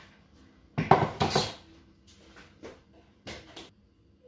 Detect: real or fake real